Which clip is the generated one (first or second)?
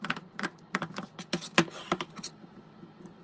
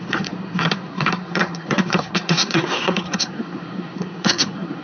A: second